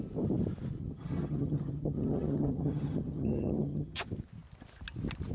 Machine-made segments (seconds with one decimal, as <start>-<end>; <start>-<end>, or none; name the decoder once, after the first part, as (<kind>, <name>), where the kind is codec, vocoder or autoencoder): 0.8-4.0 (vocoder, HiFi-GAN)